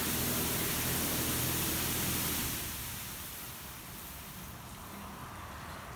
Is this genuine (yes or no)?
yes